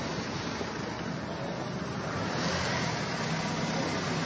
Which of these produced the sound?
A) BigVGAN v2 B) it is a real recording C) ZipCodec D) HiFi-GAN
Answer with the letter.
B